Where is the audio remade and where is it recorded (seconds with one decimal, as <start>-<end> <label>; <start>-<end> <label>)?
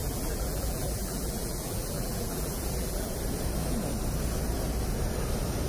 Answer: 0.0-3.1 remade; 3.1-5.7 recorded